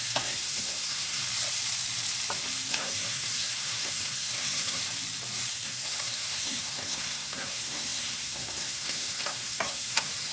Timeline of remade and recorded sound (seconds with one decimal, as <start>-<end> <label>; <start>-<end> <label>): 0.0-1.2 remade; 1.2-2.7 recorded; 2.7-4.8 remade; 4.8-5.5 recorded; 5.5-10.3 remade